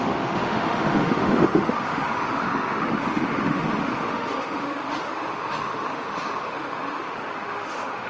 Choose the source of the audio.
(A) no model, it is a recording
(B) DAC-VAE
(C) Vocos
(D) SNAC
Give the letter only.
B